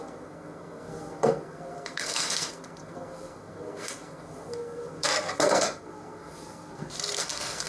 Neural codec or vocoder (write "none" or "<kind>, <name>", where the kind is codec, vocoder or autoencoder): codec, SNAC